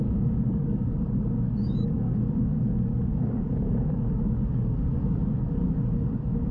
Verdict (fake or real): fake